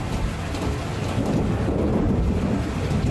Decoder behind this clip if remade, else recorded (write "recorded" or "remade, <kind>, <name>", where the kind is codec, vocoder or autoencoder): recorded